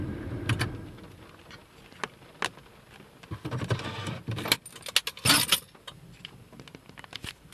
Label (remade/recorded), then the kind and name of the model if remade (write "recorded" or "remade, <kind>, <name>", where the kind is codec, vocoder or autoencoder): recorded